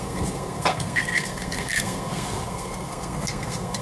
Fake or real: fake